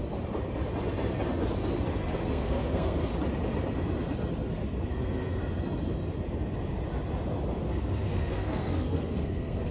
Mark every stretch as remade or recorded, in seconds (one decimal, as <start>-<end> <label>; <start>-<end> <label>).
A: 0.0-2.2 recorded; 2.2-3.1 remade; 3.1-4.9 recorded; 4.9-5.4 remade; 5.4-7.6 recorded; 7.6-9.7 remade